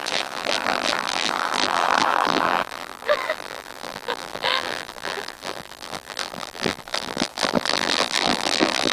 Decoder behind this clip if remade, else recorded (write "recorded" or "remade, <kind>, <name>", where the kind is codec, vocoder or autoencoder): remade, vocoder, BigVGAN v2